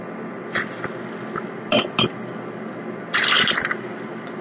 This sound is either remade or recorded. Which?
recorded